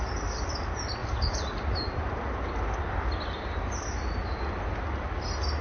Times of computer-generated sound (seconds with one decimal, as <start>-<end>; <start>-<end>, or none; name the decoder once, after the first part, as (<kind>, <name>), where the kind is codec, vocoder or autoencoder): none